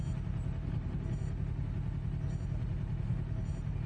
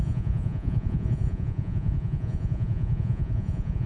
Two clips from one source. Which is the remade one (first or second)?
second